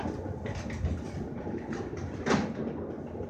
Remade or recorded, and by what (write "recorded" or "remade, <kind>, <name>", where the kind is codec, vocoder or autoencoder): recorded